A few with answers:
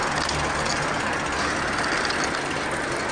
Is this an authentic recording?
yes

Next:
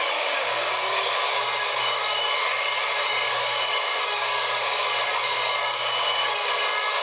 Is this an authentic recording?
no